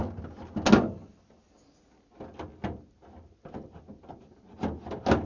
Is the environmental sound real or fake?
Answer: real